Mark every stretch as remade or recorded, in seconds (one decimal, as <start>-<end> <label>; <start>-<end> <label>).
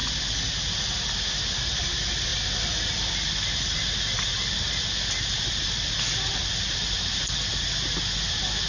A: 0.0-8.7 recorded